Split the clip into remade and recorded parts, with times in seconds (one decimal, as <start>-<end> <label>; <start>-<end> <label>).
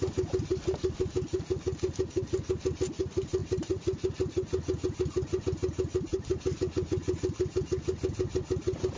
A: 0.0-9.0 recorded